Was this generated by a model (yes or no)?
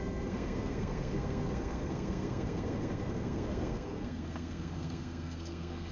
yes